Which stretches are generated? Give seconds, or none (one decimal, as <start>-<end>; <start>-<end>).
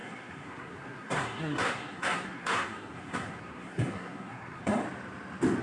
0.0-4.8